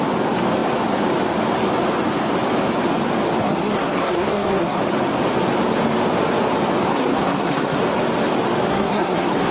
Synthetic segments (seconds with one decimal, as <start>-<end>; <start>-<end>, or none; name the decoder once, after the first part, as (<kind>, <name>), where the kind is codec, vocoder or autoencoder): 3.4-4.8 (codec, SNAC); 6.9-7.8; 8.7-9.5